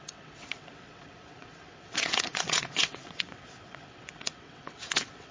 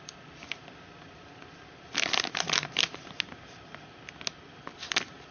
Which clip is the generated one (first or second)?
first